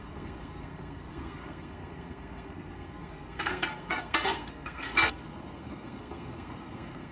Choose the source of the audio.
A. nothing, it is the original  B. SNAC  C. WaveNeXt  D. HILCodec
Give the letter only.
B